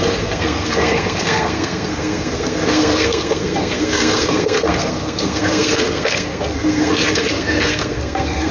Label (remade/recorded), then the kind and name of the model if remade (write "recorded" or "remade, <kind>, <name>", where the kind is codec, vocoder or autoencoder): remade, codec, SNAC